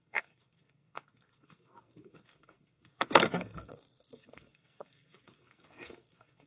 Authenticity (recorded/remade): remade